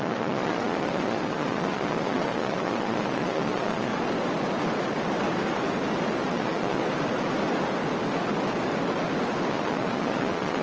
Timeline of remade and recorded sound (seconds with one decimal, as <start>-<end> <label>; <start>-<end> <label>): 0.0-3.9 remade; 3.9-6.3 recorded; 6.3-6.8 remade; 6.8-9.5 recorded; 9.5-10.6 remade